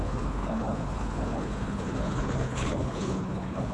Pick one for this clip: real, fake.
fake